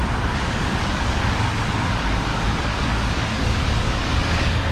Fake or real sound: fake